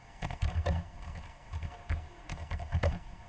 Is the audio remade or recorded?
remade